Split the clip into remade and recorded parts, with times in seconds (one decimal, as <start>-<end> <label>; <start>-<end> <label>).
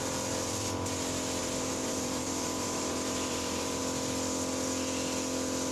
0.0-1.4 recorded; 1.4-3.8 remade; 3.8-5.7 recorded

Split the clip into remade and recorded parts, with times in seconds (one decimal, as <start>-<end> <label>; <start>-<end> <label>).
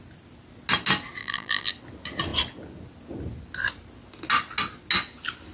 0.0-1.2 recorded; 1.2-1.7 remade; 1.7-5.5 recorded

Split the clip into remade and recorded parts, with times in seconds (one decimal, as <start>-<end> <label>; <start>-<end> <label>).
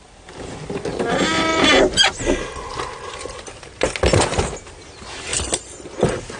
0.0-6.4 recorded